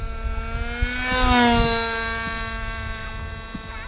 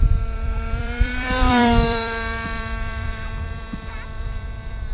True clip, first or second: first